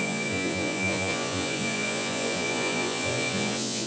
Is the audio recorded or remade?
remade